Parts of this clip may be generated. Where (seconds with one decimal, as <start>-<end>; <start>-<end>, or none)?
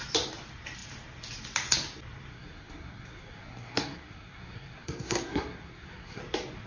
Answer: 2.3-6.2